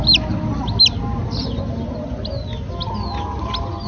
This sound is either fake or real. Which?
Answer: real